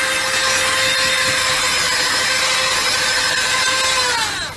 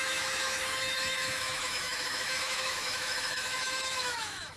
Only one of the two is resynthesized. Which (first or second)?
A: second